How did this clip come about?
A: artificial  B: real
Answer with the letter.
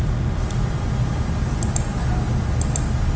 B